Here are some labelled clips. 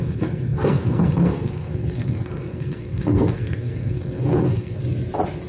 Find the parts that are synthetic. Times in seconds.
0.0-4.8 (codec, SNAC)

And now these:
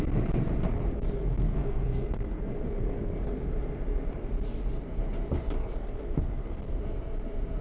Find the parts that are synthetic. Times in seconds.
0.7-3.4 (codec, SNAC); 5.6-6.8

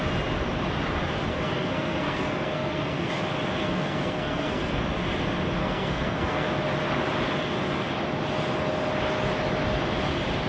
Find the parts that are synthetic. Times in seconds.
1.3-3.1 (codec, SNAC); 3.6-4.8; 5.6-6.5

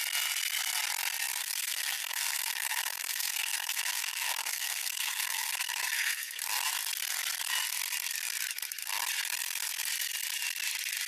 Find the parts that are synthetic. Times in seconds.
1.4-6.4 (codec, SNAC)

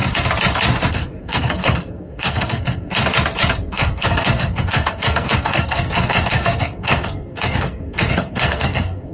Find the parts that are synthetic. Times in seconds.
0.9-2.9 (codec, SNAC); 3.7-9.1

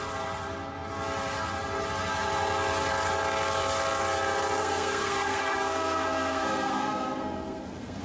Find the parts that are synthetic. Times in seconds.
4.6-8.0 (codec, SNAC)

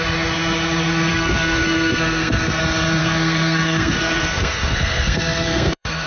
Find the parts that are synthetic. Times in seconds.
1.1-2.6 (codec, SNAC); 3.0-6.1